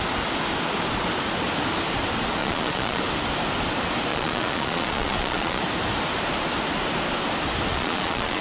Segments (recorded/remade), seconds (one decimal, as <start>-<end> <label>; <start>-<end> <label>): 0.0-2.4 recorded; 2.4-3.0 remade; 3.0-4.1 recorded; 4.1-5.6 remade; 5.6-7.7 recorded; 7.7-8.4 remade